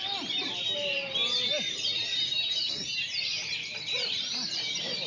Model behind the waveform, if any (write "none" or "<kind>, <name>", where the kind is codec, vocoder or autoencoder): vocoder, BigVGAN v2